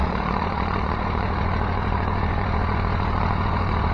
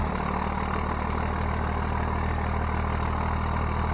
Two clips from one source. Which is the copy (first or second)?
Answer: first